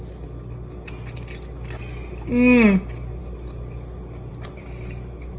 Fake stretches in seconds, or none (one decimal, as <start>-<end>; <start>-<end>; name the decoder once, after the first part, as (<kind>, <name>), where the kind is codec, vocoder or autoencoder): none